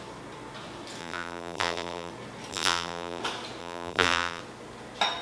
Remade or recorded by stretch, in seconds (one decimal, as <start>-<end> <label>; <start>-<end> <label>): 0.0-1.0 recorded; 1.0-2.1 remade; 2.1-2.5 recorded; 2.5-3.2 remade; 3.2-3.6 recorded; 3.6-4.4 remade; 4.4-5.2 recorded